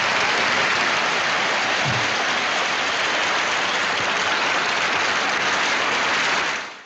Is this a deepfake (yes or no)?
no